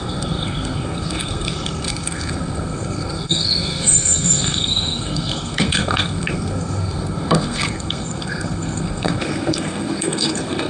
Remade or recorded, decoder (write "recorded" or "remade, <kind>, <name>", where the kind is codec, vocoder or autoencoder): remade, codec, SNAC